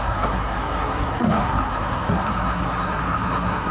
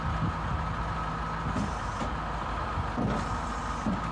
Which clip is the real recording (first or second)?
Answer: second